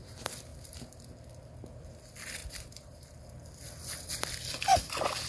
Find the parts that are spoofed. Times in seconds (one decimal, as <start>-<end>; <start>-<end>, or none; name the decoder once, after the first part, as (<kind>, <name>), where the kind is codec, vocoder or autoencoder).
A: 0.5-1.0 (vocoder, BigVGAN v2); 2.4-3.2